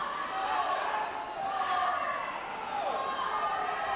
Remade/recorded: recorded